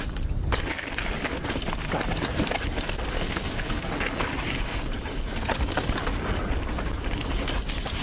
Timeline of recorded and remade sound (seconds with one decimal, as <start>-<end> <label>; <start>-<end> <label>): 0.0-3.1 recorded; 3.1-3.9 remade; 3.9-8.0 recorded